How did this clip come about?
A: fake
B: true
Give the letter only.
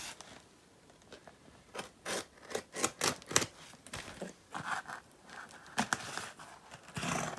B